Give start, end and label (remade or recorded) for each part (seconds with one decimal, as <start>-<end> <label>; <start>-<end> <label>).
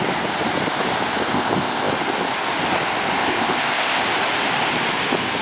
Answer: 0.0-1.2 recorded; 1.2-1.9 remade; 1.9-3.2 recorded; 3.2-4.0 remade; 4.0-5.4 recorded